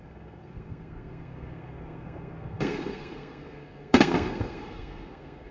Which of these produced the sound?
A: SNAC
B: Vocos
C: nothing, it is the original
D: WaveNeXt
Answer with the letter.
A